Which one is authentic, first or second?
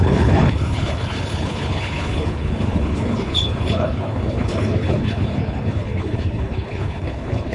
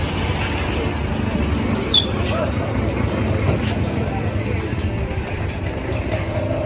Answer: second